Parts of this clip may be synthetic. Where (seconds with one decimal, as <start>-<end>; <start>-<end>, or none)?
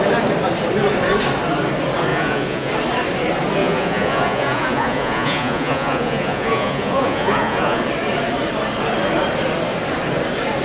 2.1-2.7; 3.6-7.8